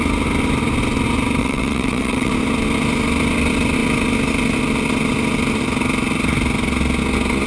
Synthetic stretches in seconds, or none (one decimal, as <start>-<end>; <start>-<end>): 1.4-2.3